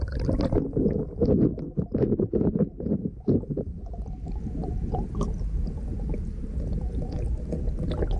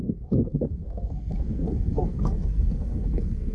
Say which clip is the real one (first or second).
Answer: first